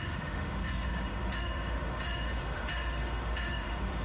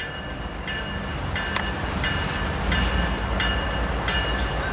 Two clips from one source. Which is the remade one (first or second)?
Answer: first